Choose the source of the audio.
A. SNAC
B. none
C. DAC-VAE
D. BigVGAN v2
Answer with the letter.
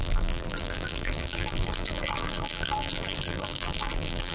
D